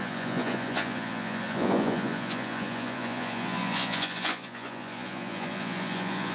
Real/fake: fake